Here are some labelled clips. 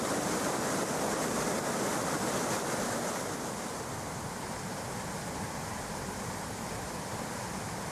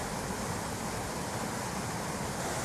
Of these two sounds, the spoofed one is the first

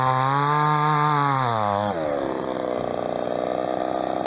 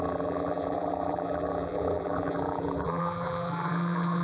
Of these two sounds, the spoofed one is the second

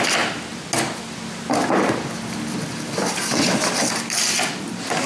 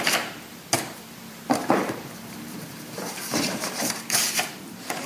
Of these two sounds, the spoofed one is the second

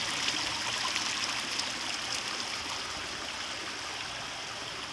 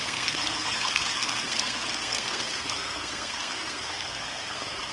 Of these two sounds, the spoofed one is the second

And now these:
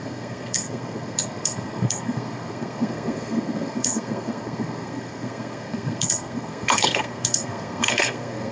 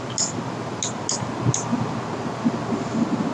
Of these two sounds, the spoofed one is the first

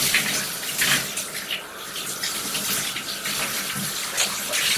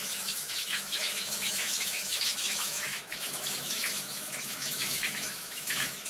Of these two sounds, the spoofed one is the second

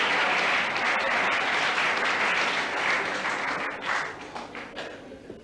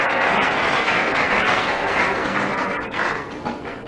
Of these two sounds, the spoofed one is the second